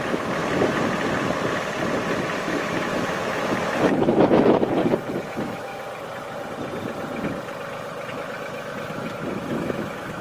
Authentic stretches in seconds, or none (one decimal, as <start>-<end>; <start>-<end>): 0.4-2.4; 4.8-5.3; 5.7-8.1